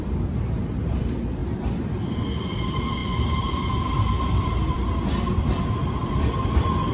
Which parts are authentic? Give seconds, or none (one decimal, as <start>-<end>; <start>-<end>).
none